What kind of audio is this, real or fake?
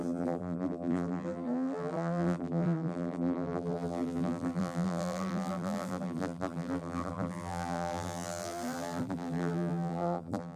fake